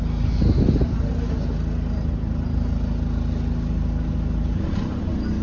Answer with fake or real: real